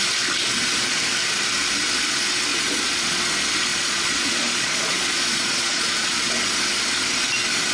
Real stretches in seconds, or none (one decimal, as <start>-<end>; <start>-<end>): 0.0-2.5; 3.2-3.7; 6.3-7.7